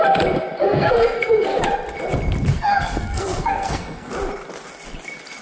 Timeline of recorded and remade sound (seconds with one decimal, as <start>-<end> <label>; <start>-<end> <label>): 0.0-0.6 recorded; 0.6-1.6 remade; 1.6-2.5 recorded; 2.5-4.1 remade; 4.1-5.4 recorded